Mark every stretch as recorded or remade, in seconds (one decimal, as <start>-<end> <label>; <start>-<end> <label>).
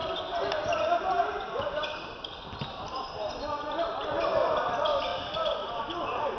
0.0-3.3 remade; 3.3-6.4 recorded